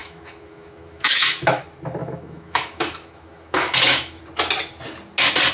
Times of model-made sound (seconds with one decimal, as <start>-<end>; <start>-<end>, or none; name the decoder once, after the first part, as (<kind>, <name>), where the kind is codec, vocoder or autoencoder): 0.0-1.6 (autoencoder, DAC-VAE); 2.0-4.2